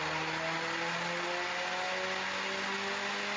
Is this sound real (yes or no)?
yes